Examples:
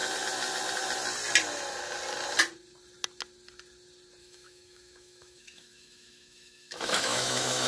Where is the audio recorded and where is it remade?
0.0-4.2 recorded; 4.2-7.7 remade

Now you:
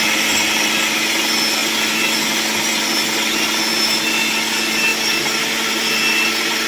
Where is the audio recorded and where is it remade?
0.0-6.7 recorded

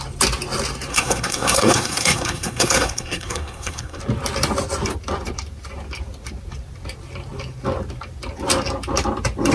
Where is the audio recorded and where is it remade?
0.0-0.9 recorded; 0.9-4.0 remade; 4.0-9.5 recorded